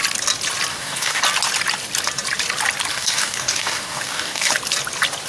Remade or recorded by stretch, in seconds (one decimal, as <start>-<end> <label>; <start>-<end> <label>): 0.0-0.7 recorded; 0.7-1.2 remade; 1.2-2.9 recorded; 2.9-4.5 remade; 4.5-5.3 recorded